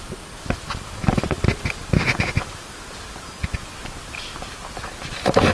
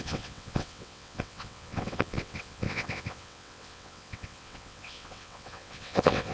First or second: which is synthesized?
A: second